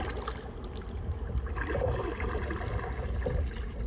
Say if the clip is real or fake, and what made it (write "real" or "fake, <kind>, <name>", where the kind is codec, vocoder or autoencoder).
real